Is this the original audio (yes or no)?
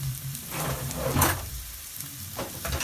no